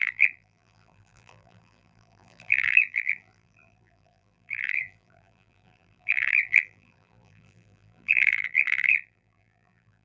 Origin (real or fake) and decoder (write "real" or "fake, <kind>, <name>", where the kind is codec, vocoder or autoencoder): fake, vocoder, BigVGAN v2